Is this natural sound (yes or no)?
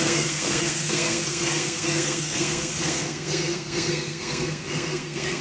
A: no